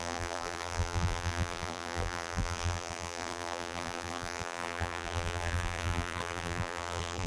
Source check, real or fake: fake